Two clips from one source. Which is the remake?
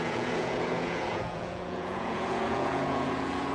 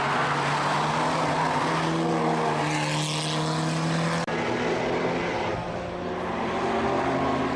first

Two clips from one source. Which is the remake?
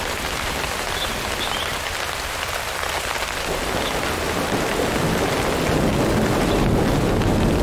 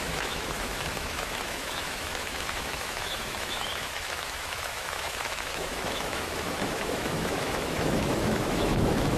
second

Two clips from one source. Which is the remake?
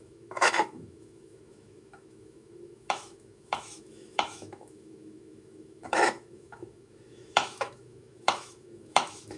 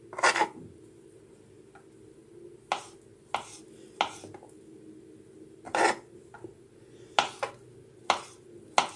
first